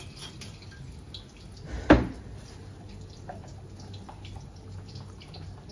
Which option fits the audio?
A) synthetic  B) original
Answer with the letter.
B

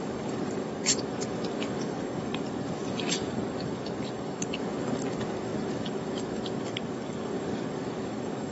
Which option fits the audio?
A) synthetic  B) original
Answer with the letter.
A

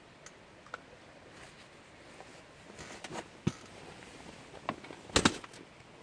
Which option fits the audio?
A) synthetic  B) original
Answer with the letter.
B